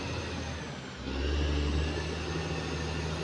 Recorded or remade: recorded